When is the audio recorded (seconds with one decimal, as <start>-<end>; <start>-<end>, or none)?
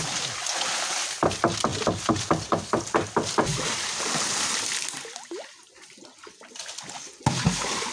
0.0-7.9